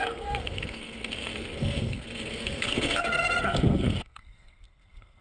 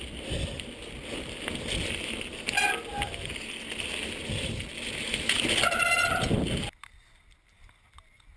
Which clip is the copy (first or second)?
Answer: first